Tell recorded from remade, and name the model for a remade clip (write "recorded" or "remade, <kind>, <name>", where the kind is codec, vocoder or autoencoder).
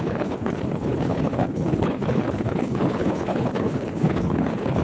remade, codec, HILCodec